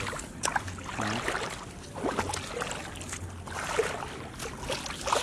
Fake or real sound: real